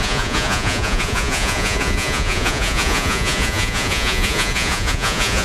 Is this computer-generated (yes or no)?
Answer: yes